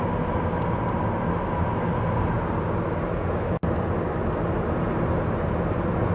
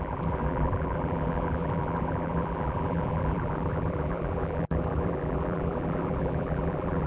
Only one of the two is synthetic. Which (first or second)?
second